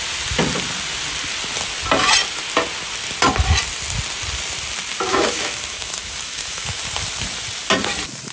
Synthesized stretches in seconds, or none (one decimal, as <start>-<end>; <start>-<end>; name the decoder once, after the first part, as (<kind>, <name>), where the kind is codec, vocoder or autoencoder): 5.1-6.8 (autoencoder, DAC-VAE)

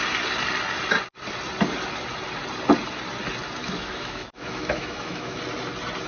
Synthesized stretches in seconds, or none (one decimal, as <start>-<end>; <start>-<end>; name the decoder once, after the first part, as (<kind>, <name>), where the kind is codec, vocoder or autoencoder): 3.6-5.4 (autoencoder, DAC-VAE)

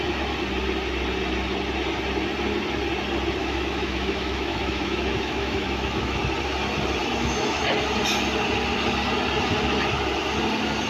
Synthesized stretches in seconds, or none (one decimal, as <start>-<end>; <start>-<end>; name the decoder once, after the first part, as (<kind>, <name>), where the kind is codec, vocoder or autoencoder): 3.4-6.2 (autoencoder, DAC-VAE); 7.0-7.6

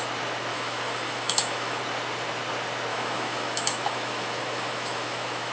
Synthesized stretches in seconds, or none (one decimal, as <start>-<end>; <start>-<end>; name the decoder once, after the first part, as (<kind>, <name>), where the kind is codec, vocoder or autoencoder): 0.5-1.8 (autoencoder, DAC-VAE); 2.9-5.5

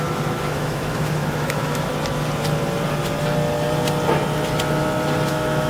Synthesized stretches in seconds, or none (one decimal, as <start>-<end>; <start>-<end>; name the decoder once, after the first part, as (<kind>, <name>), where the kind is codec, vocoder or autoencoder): 0.0-1.9 (autoencoder, DAC-VAE); 5.3-5.7

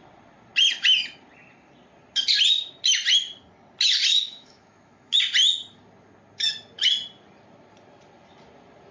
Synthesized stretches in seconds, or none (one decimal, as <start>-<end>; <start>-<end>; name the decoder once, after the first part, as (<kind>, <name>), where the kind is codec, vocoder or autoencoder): 4.1-5.2 (autoencoder, DAC-VAE)

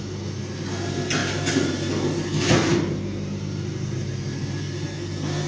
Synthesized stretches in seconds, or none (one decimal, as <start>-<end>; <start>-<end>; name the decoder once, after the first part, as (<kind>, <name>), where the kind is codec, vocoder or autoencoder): none

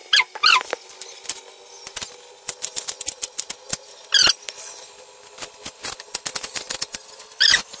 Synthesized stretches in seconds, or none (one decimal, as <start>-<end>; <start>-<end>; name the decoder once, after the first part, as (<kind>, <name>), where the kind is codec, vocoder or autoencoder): none